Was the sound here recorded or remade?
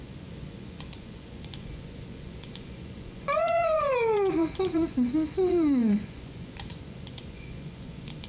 remade